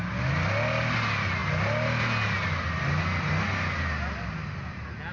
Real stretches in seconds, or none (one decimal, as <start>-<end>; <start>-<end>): 0.0-5.1